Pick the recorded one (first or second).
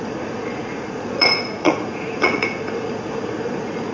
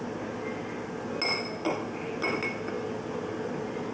second